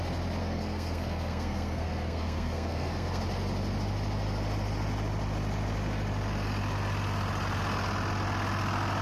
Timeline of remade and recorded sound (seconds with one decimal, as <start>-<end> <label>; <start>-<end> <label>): 0.0-0.4 recorded; 0.4-3.2 remade; 3.2-9.0 recorded